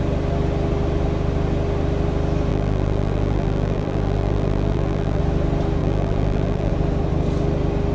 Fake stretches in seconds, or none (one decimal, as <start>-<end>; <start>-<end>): 2.5-5.2; 5.8-6.7